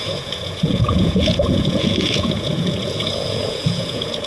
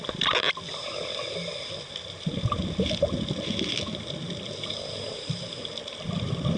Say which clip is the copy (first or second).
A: first